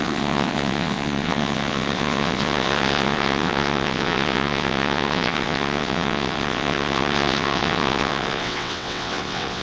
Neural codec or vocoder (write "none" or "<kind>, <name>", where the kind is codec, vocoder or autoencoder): vocoder, WaveNeXt